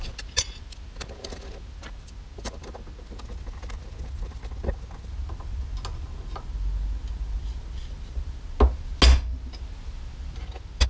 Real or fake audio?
real